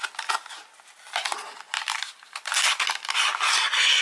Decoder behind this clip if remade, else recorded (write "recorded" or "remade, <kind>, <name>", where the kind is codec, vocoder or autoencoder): recorded